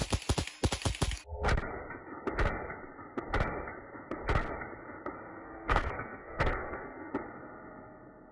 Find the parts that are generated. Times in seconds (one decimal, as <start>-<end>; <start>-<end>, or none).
5.3-7.1